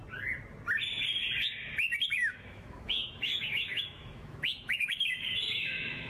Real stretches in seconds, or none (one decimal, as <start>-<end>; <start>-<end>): 0.0-2.2